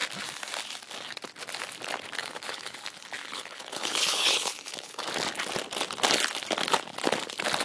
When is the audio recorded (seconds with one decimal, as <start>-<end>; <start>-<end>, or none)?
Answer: 0.0-2.2; 2.8-3.2; 5.1-7.6